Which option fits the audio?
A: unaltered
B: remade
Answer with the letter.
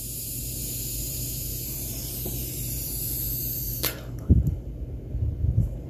B